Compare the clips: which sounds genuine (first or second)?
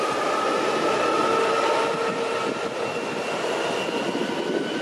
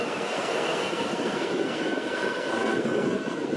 first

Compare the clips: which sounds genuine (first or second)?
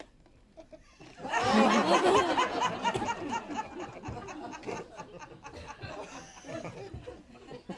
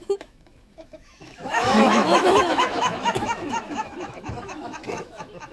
first